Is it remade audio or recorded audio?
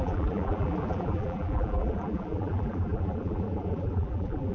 remade